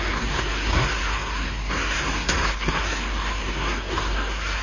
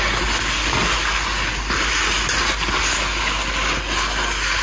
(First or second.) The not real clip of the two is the first